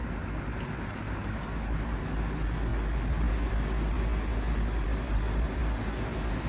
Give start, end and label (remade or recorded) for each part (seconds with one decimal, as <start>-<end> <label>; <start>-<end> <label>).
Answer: 0.0-6.5 recorded